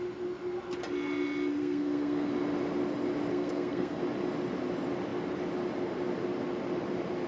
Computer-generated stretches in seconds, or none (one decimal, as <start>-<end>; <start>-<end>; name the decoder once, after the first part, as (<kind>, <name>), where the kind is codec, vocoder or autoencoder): 1.6-2.3 (codec, SNAC); 3.3-4.0